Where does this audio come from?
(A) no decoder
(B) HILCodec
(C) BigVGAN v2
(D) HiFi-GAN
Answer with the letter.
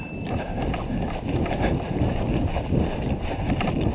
A